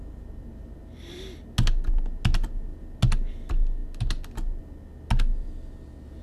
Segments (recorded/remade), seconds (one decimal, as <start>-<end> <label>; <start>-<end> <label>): 0.0-6.2 recorded